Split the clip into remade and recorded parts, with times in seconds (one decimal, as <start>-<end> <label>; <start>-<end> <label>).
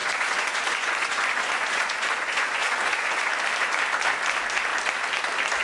0.0-3.3 remade; 3.3-5.6 recorded